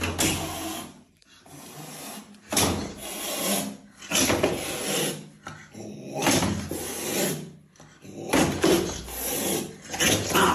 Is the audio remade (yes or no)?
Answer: no